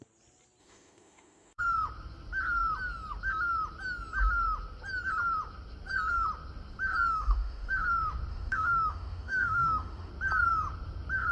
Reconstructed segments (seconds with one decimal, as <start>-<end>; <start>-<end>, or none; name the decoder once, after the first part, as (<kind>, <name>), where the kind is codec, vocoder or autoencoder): 0.6-1.6 (autoencoder, DAC-VAE); 7.1-7.7; 8.3-10.1